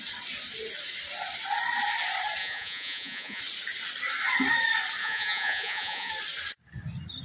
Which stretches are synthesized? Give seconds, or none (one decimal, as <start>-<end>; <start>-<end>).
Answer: 2.4-3.4; 5.0-6.1